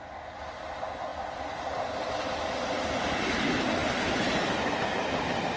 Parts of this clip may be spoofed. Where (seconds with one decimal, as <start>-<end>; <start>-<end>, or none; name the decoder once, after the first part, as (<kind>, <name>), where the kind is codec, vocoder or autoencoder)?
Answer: none